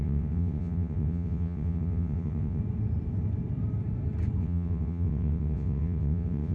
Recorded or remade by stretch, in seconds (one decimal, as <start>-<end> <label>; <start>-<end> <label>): 0.0-2.6 remade; 2.6-4.4 recorded; 4.4-6.5 remade